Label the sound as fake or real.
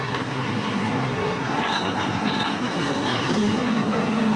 fake